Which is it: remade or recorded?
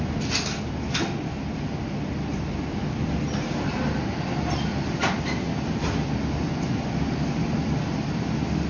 recorded